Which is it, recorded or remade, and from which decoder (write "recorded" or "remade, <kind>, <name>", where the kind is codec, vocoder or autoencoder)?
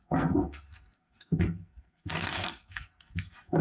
remade, codec, SNAC